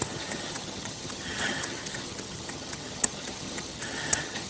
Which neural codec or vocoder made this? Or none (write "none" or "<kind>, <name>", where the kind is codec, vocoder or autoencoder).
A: vocoder, HiFi-GAN